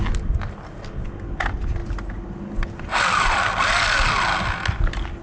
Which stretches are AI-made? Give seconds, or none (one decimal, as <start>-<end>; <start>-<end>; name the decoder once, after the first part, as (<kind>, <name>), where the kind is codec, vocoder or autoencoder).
none